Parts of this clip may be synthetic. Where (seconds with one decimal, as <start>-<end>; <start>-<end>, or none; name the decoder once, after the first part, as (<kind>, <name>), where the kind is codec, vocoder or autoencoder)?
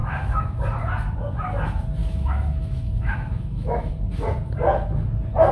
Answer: 0.0-0.6 (autoencoder, DAC-VAE); 2.0-3.9